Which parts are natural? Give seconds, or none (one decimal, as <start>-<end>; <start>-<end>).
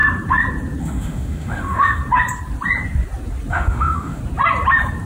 0.0-0.8; 2.0-3.5; 4.2-5.1